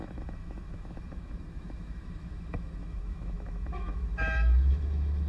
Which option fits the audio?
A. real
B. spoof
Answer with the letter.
B